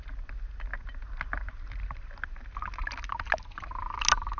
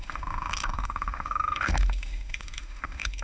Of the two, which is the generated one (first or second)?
second